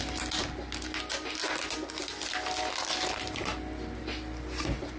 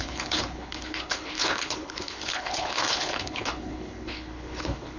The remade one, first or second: second